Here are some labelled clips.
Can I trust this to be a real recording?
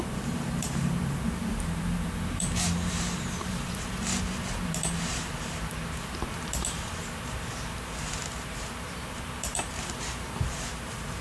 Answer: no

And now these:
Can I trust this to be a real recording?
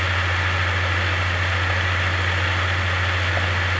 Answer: yes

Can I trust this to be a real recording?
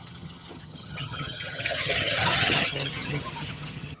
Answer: no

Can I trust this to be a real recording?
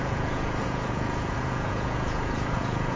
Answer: no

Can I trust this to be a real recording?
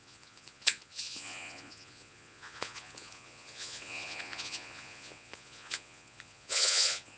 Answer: no